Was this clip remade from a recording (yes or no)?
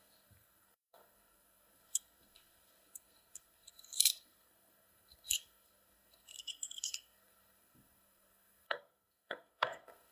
yes